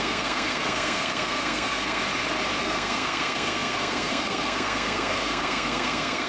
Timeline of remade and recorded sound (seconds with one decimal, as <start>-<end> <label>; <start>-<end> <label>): 0.0-2.0 remade; 2.0-2.6 recorded; 2.6-6.3 remade